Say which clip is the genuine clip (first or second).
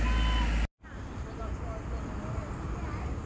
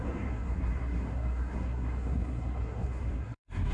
first